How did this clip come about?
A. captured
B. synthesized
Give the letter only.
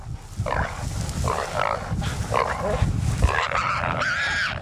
A